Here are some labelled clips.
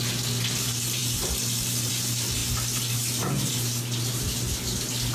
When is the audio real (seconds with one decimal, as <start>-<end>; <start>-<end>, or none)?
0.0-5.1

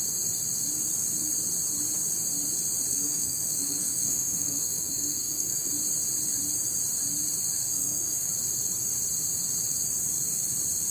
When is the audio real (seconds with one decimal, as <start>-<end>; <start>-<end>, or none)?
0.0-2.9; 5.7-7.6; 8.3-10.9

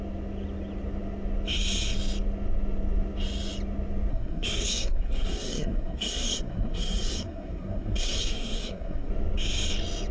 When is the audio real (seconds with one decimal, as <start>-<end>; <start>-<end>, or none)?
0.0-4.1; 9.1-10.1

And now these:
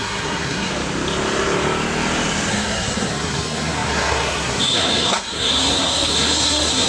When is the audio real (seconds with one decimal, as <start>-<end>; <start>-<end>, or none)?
0.7-2.5